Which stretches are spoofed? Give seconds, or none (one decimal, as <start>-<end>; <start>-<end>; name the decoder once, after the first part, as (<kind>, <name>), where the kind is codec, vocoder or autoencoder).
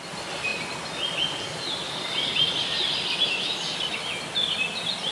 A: none